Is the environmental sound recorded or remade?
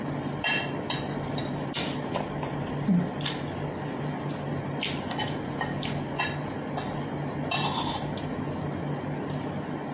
recorded